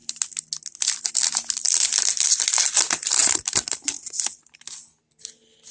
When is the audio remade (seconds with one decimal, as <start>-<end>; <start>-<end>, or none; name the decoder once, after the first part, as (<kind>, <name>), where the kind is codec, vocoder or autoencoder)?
none